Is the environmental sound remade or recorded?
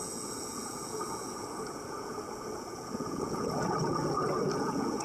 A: remade